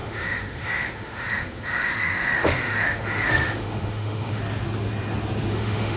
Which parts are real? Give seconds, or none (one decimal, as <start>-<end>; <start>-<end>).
4.4-5.5